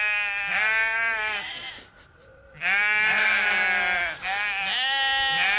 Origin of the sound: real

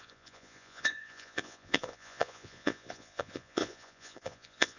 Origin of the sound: fake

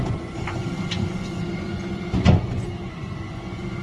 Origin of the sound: fake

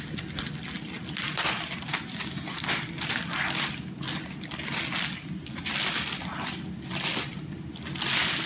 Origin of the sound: real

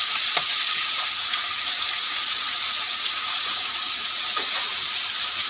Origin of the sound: fake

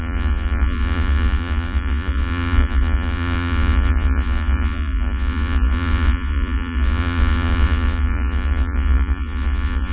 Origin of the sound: fake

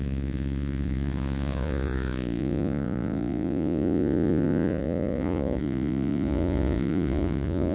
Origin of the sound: fake